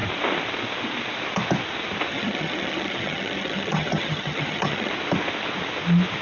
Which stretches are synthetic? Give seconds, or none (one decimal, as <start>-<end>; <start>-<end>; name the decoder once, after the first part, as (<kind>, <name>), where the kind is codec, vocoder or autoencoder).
2.1-4.9 (vocoder, HiFi-GAN)